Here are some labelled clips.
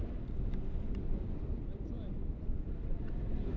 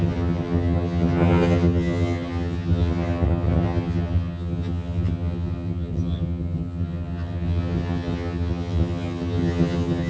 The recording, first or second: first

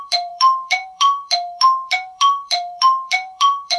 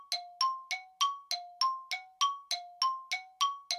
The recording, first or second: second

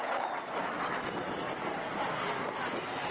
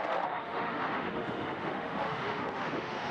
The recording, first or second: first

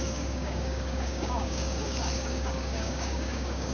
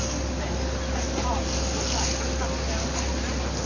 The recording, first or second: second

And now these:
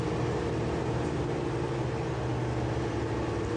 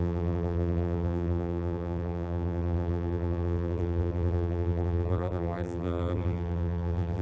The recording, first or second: first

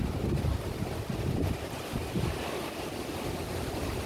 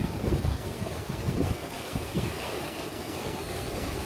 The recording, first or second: first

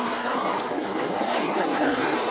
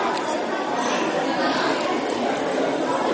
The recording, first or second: second